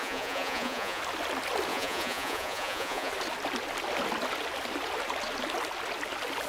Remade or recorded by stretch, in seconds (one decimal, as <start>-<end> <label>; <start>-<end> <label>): 0.0-1.0 remade; 1.0-1.7 recorded; 1.7-3.1 remade; 3.1-6.5 recorded